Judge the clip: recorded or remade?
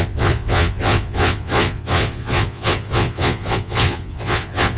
remade